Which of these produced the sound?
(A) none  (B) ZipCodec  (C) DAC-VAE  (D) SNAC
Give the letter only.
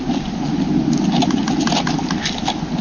A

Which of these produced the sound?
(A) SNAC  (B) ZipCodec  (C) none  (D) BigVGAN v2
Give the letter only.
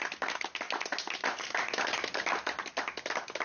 C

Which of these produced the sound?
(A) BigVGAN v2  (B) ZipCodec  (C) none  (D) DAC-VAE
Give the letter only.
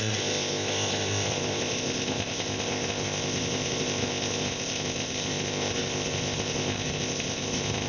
B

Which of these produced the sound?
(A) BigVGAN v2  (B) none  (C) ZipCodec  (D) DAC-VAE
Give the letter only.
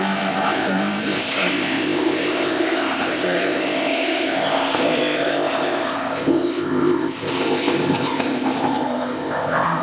C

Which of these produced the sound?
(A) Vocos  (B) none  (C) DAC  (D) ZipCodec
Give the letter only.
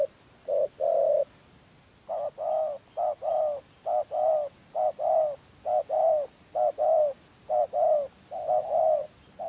B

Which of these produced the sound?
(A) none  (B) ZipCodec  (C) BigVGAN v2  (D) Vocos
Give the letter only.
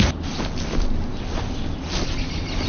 A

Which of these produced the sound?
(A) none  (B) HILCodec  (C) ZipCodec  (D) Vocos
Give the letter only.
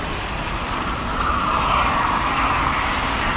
A